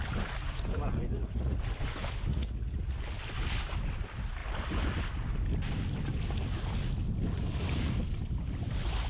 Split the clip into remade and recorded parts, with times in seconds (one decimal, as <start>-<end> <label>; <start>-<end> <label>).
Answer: 0.0-1.1 recorded; 1.1-1.6 remade; 1.6-2.3 recorded; 2.3-3.0 remade; 3.0-9.1 recorded